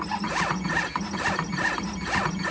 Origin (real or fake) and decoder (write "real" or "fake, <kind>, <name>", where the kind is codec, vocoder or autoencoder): real